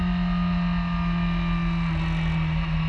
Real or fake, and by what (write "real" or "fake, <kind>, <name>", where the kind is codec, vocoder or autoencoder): real